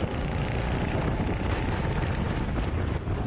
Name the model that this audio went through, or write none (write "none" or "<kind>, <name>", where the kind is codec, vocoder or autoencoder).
none